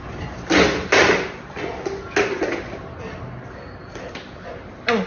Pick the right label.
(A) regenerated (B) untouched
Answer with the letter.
B